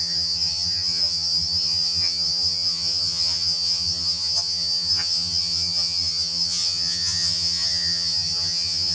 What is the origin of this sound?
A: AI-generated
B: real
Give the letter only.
A